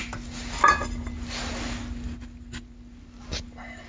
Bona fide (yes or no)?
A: yes